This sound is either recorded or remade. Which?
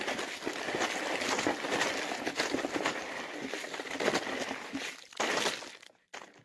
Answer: recorded